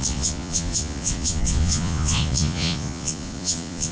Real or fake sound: fake